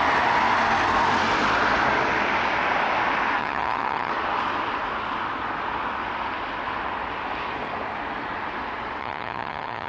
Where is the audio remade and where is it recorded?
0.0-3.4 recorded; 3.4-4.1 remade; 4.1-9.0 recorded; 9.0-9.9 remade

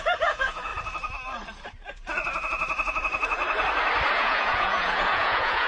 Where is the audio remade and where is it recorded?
0.0-0.7 remade; 0.7-4.1 recorded; 4.1-5.7 remade